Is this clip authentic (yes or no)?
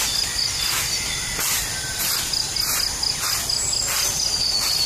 yes